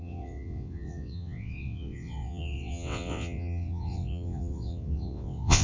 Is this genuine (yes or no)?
no